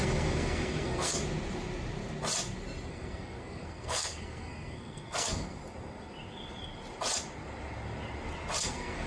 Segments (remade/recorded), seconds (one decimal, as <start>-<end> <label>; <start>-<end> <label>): 0.0-1.2 remade; 1.2-2.9 recorded; 2.9-5.6 remade; 5.6-8.6 recorded; 8.6-9.1 remade